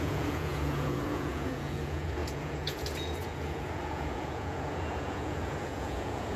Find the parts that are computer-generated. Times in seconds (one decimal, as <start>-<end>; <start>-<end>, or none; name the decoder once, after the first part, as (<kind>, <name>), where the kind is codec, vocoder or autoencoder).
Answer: 0.0-6.4 (vocoder, Vocos)